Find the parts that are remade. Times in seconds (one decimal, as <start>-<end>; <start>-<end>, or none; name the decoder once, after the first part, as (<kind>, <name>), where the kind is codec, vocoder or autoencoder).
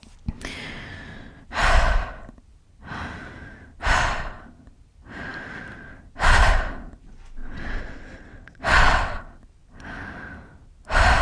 7.4-9.2 (vocoder, WaveNeXt)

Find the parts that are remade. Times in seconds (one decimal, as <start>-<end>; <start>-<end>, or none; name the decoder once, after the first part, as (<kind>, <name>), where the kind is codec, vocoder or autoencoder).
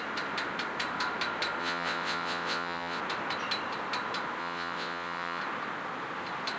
1.6-3.0 (vocoder, WaveNeXt); 4.4-5.4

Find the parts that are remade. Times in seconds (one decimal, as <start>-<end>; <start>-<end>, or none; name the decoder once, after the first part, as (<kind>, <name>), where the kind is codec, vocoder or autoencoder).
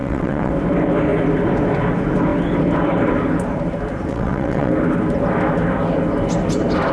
0.0-0.5 (vocoder, WaveNeXt); 4.1-4.7